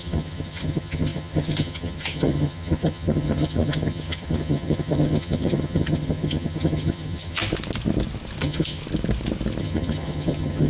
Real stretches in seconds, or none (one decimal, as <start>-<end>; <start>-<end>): 7.4-8.4; 8.8-9.6